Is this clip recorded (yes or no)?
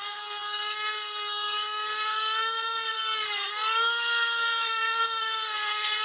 no